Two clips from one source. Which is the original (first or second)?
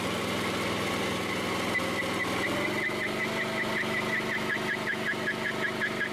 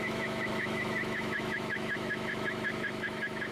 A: first